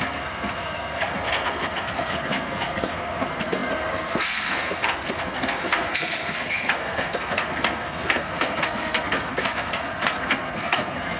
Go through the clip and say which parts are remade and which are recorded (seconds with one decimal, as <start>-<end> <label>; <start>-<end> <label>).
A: 0.0-11.2 remade